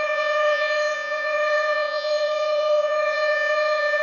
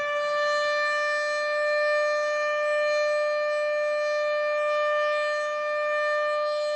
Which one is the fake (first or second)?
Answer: first